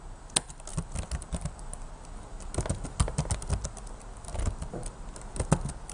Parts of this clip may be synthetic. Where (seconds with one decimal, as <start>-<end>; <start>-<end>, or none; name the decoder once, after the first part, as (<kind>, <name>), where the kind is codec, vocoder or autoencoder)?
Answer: none